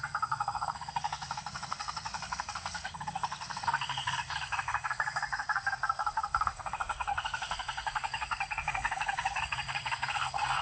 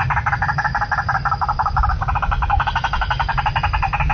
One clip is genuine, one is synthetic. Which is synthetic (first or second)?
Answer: first